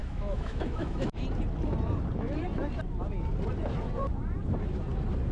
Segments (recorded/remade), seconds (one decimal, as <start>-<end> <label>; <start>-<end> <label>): 0.0-1.2 remade; 1.2-5.3 recorded